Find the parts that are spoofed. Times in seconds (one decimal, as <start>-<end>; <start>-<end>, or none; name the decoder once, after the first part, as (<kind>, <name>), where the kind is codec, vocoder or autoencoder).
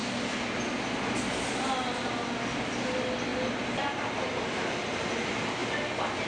none